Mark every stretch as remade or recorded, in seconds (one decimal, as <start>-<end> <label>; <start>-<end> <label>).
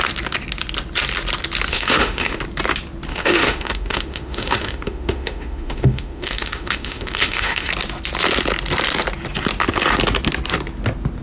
0.0-1.7 recorded; 1.7-2.4 remade; 2.4-3.1 recorded; 3.1-7.7 remade; 7.7-11.2 recorded